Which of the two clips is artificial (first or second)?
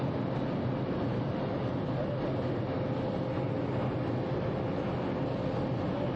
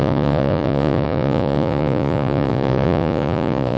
second